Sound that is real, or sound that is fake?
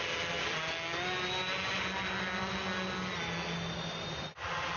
real